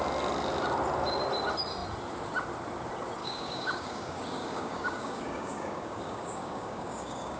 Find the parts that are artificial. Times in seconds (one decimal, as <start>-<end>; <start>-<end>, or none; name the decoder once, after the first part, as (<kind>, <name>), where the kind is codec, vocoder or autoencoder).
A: 3.2-7.4 (codec, DAC)